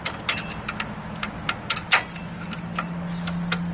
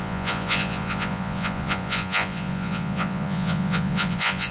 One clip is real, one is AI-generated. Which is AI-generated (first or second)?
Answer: second